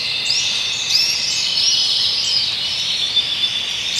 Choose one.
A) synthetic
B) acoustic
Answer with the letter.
A